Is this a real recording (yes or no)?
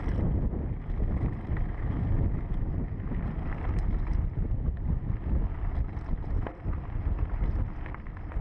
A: yes